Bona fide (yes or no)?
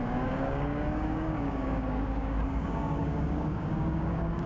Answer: no